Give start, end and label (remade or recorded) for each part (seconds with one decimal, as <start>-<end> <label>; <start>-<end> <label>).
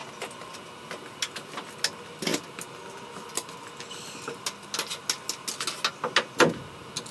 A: 0.0-7.1 recorded